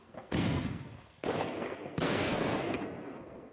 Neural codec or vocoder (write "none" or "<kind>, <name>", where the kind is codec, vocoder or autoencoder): codec, SNAC